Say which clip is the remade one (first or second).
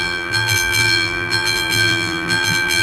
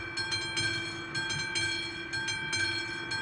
first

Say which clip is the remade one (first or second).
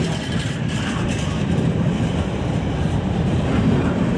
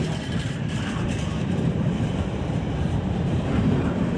second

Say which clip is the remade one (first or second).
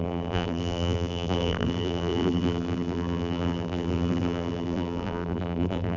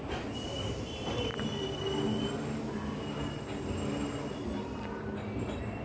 first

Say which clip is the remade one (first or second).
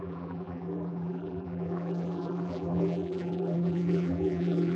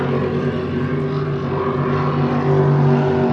first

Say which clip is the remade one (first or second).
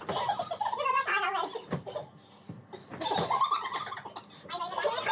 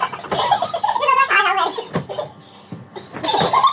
first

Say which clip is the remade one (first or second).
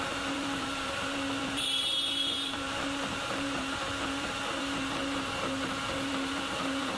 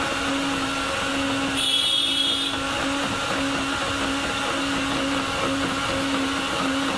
first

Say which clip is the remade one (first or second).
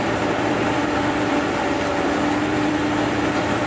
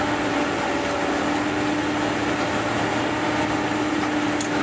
first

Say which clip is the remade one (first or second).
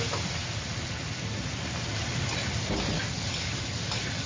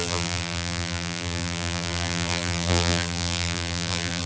second